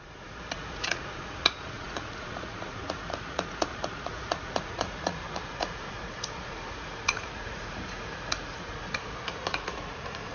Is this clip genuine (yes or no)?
no